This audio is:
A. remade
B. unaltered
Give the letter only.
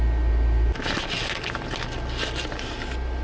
B